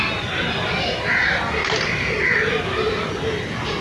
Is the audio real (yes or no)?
yes